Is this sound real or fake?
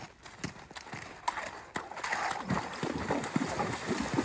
real